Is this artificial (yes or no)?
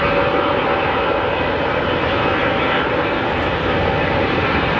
yes